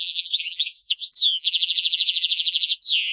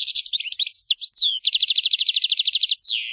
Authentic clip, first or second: second